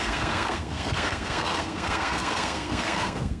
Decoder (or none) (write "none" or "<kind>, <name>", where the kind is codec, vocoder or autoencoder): codec, SNAC